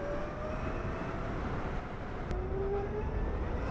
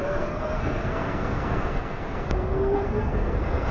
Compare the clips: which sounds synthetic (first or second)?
second